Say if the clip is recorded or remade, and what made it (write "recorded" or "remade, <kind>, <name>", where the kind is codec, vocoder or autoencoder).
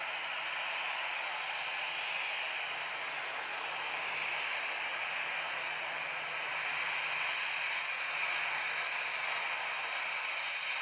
recorded